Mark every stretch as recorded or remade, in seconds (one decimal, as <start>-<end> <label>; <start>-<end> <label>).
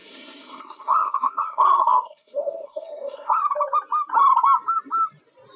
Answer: 0.0-3.4 remade; 3.4-5.6 recorded